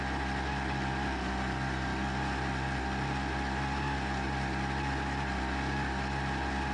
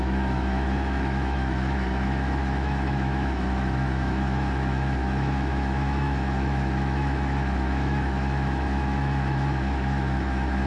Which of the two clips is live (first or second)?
first